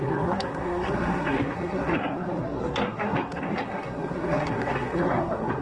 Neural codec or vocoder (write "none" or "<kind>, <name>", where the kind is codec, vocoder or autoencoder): codec, SNAC